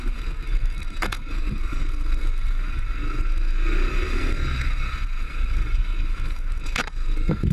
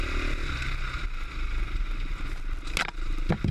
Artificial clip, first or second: first